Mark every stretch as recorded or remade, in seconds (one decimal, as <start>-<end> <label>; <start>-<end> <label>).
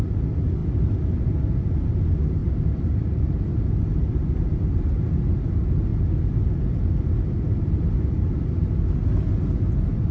0.0-2.4 recorded; 2.4-4.9 remade; 4.9-5.9 recorded; 5.9-7.9 remade; 7.9-10.1 recorded